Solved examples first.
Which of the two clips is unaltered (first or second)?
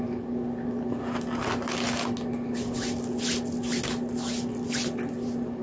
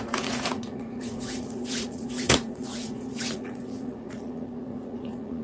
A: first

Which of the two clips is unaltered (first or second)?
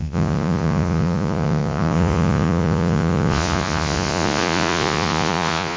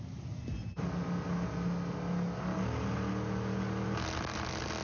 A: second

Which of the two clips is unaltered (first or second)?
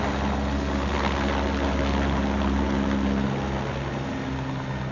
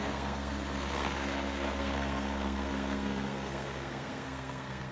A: first